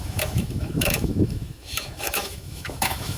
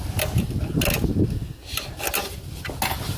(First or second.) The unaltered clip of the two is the second